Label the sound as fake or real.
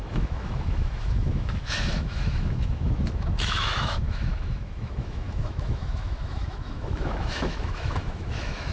fake